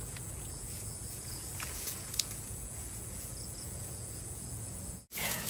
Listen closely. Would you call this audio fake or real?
fake